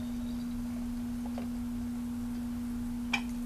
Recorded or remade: recorded